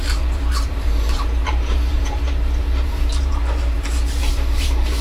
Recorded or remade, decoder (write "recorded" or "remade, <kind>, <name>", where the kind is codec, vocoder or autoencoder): remade, vocoder, BigVGAN v2